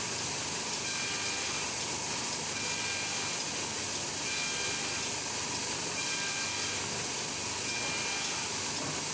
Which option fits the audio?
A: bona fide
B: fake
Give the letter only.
A